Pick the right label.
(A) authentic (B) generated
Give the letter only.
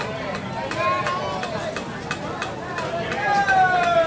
A